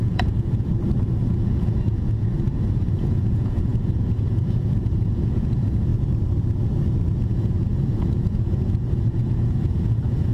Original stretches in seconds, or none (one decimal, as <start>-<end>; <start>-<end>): 0.7-1.3; 5.9-7.2